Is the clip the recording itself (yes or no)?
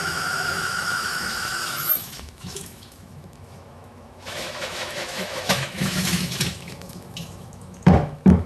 no